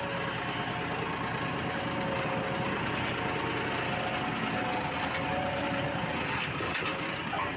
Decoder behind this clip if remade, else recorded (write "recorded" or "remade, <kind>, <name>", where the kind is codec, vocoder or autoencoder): recorded